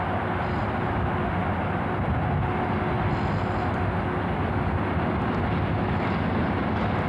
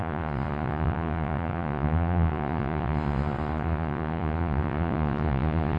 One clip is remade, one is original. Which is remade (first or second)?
second